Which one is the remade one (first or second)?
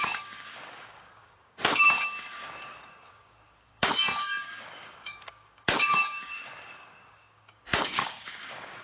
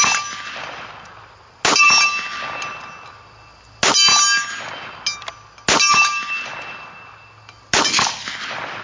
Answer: first